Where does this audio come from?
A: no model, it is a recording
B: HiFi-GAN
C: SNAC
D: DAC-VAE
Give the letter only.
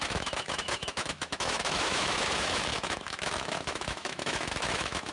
D